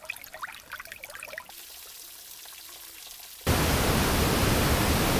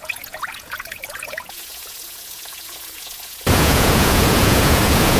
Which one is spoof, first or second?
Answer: second